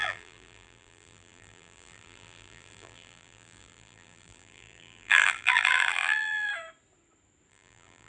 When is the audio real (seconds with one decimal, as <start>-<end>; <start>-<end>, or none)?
6.5-7.5